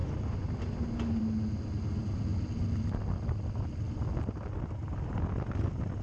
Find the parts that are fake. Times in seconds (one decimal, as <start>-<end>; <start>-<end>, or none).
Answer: none